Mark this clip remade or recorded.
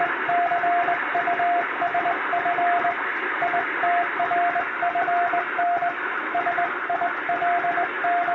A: recorded